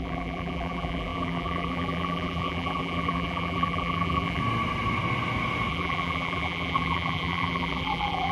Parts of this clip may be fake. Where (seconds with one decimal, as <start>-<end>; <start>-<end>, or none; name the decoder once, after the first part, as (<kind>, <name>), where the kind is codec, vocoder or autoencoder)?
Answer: 0.0-4.4 (vocoder, BigVGAN v2); 5.7-8.3